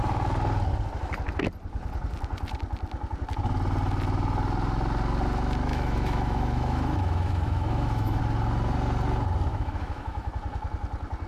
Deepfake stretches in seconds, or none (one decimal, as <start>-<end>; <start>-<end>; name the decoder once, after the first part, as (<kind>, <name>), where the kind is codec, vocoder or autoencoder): 5.7-8.2 (autoencoder, DAC-VAE); 9.5-10.3

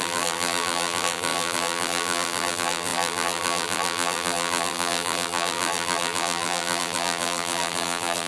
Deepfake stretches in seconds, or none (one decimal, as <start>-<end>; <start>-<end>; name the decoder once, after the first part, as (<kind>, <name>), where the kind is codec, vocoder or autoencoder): 0.0-8.3 (vocoder, BigVGAN v2)

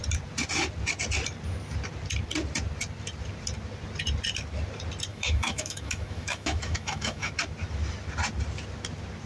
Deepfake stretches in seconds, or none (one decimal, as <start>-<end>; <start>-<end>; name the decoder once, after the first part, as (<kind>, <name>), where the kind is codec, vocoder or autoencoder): 5.1-7.3 (autoencoder, DAC-VAE)

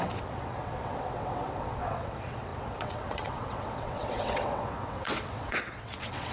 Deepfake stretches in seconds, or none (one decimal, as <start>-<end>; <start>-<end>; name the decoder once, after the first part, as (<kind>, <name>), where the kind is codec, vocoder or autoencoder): 0.0-6.3 (vocoder, WaveNeXt)

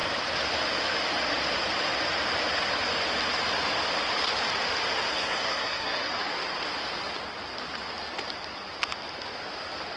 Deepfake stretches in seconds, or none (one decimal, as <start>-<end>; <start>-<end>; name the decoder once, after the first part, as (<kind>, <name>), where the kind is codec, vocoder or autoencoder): 5.1-6.1 (codec, SNAC)

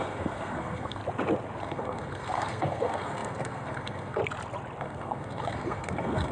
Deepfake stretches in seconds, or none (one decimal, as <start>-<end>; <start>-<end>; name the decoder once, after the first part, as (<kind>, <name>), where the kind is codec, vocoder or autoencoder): 0.0-1.0 (codec, SNAC); 1.6-4.2; 4.8-6.3

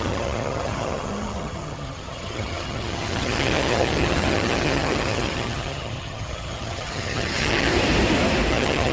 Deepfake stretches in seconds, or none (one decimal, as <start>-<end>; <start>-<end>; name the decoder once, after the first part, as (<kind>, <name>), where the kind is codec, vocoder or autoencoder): 0.0-7.7 (vocoder, HiFi-GAN); 8.5-8.9

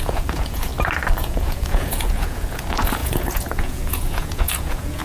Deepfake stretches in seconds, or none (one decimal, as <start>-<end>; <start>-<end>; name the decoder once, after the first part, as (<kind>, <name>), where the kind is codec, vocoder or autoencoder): 0.0-0.7 (vocoder, Vocos); 1.2-5.0